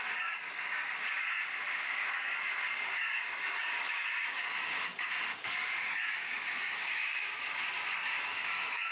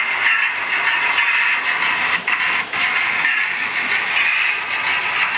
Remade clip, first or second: first